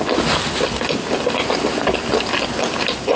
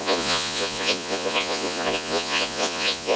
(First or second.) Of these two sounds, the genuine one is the first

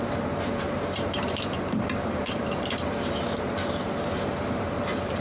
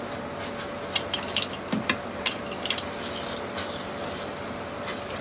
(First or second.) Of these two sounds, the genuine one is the second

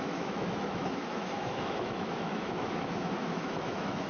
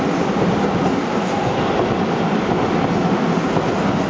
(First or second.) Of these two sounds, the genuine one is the second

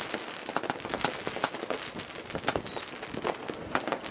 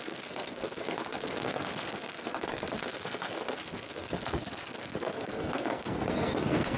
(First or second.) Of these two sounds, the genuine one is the first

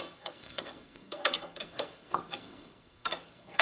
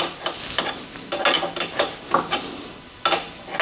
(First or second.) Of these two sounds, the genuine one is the second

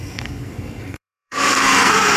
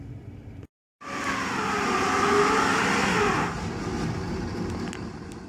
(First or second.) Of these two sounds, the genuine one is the second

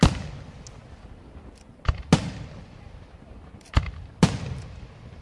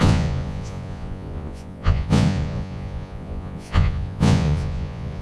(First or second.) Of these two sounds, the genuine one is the first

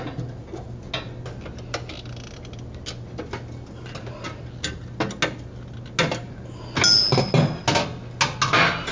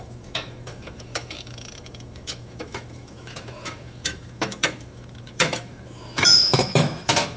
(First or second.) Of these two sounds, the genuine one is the first